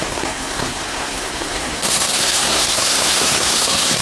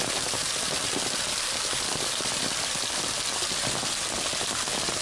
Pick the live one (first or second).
second